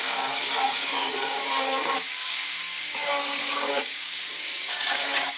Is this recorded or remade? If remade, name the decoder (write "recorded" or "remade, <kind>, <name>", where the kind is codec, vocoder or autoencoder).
remade, codec, DAC